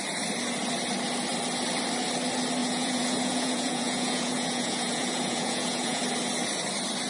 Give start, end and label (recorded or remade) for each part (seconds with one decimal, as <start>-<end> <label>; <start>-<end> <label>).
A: 0.0-2.6 recorded; 2.6-6.0 remade; 6.0-7.1 recorded